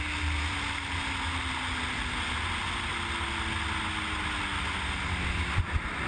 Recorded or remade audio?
recorded